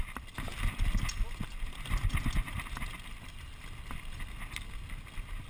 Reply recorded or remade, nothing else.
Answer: recorded